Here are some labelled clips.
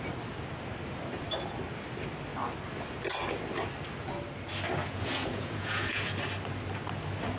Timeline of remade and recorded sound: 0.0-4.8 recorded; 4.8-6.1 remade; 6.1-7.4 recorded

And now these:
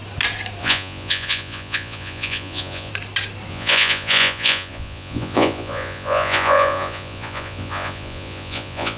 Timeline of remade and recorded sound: 0.0-0.6 recorded; 0.6-2.9 remade; 2.9-3.5 recorded; 3.5-9.0 remade

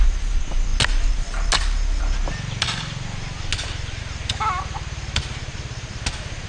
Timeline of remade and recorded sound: 0.0-6.5 recorded

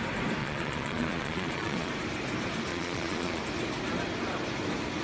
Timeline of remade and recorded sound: 0.0-0.4 recorded; 0.4-1.9 remade; 1.9-2.7 recorded; 2.7-3.4 remade; 3.4-5.0 recorded

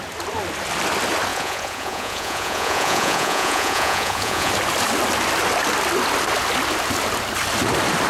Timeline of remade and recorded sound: 0.0-1.3 recorded; 1.3-4.5 remade; 4.5-8.1 recorded

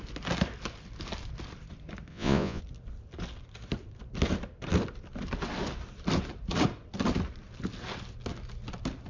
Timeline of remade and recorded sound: 0.0-2.1 recorded; 2.1-2.6 remade; 2.6-9.1 recorded